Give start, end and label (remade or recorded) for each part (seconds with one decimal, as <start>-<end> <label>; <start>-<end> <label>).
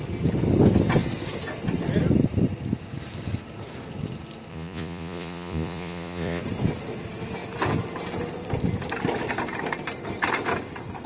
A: 0.0-4.5 recorded; 4.5-6.4 remade; 6.4-11.1 recorded